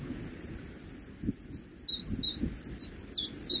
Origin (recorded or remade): recorded